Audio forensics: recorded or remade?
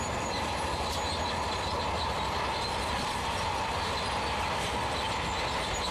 recorded